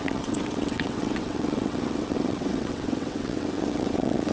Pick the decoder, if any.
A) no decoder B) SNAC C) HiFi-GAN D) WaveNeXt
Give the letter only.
D